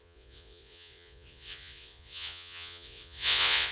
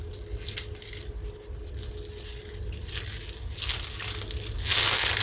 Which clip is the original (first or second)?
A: second